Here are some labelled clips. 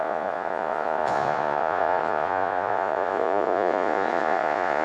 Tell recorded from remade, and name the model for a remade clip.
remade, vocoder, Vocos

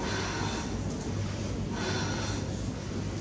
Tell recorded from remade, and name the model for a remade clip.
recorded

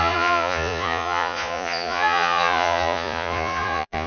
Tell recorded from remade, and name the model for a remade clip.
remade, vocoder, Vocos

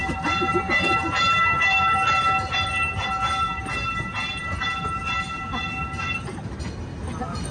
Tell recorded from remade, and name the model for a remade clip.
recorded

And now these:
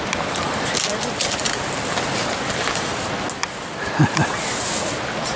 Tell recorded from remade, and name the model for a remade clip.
recorded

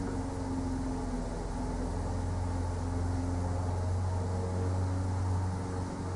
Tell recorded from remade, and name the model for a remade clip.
recorded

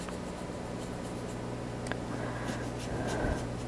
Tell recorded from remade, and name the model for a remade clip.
recorded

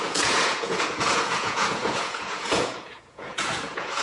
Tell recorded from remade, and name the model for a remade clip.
remade, vocoder, Vocos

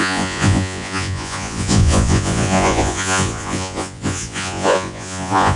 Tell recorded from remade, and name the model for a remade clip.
remade, vocoder, Vocos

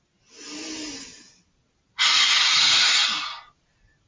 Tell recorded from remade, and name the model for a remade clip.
recorded